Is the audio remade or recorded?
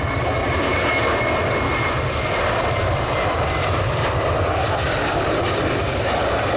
remade